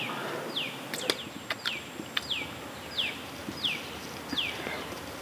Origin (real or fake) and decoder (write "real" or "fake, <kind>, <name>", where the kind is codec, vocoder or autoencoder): real